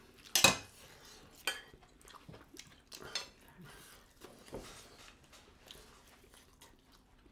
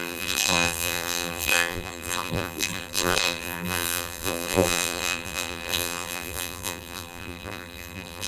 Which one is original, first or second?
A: first